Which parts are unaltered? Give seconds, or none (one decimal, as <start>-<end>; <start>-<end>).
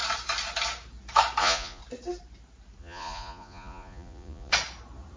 0.0-1.4; 1.8-2.8; 4.5-5.2